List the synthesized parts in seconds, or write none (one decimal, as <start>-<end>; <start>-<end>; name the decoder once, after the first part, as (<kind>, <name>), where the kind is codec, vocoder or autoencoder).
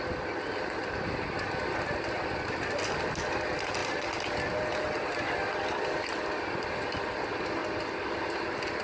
none